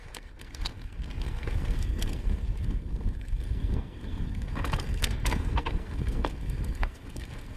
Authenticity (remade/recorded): remade